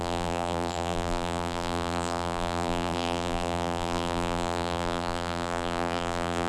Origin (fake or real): fake